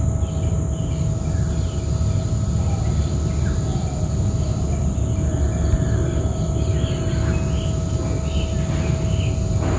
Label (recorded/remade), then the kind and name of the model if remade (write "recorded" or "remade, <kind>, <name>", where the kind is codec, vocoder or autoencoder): recorded